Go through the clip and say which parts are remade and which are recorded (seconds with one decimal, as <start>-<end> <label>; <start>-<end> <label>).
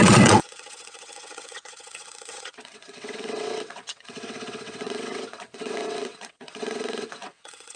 0.0-7.8 remade